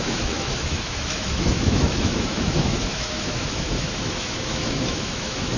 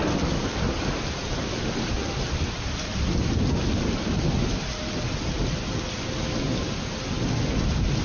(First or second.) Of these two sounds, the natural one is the second